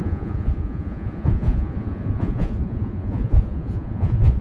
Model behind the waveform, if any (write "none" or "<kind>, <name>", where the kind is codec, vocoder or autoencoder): vocoder, Vocos